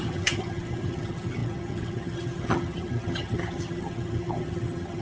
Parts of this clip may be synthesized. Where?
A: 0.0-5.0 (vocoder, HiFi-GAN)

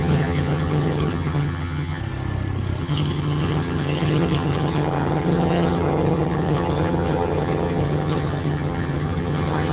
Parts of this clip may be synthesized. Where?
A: 0.0-2.0 (vocoder, HiFi-GAN); 2.8-9.7

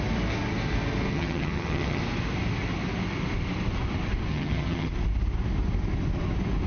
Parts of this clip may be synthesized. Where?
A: 1.1-2.0 (vocoder, HiFi-GAN); 4.3-4.9

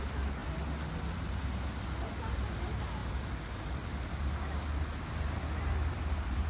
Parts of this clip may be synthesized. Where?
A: none

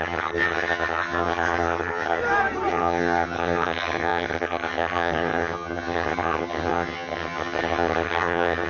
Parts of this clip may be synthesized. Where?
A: 0.0-2.2 (vocoder, HiFi-GAN); 2.7-8.7

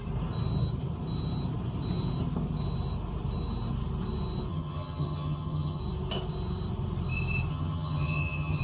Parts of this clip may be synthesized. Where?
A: 4.5-5.8 (vocoder, HiFi-GAN); 7.5-8.6

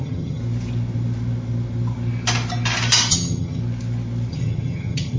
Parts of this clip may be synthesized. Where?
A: 0.0-0.4 (vocoder, HiFi-GAN); 3.1-3.6; 4.3-5.2

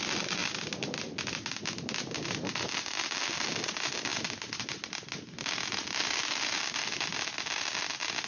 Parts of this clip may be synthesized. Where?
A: none